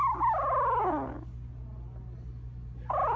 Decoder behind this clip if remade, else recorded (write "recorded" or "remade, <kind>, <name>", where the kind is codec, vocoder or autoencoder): recorded